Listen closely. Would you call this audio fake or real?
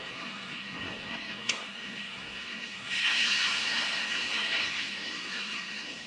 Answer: fake